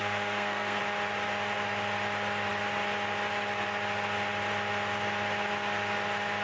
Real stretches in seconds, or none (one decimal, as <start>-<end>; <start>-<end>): 0.8-6.4